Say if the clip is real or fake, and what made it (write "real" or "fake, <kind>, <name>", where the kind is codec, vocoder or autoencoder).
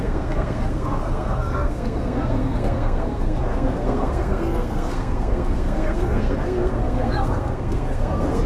fake, codec, SNAC